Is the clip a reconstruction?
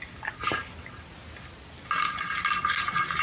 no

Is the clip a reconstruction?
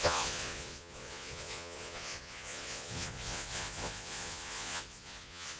yes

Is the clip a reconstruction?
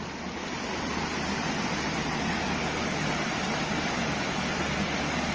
no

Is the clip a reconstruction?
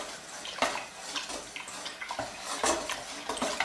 no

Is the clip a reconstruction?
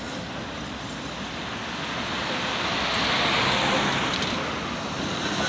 no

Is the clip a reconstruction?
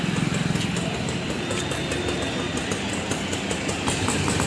no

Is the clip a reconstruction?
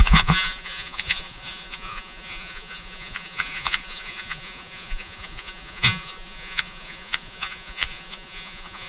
yes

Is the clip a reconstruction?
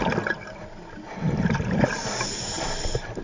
no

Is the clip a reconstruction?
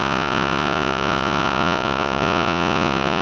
yes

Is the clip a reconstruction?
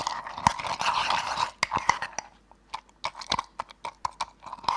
no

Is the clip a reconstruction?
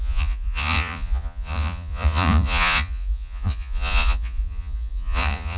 yes